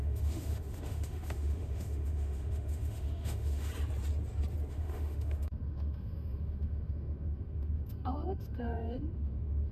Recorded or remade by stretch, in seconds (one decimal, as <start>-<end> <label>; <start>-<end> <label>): 0.0-3.7 remade; 3.7-4.7 recorded; 4.7-9.7 remade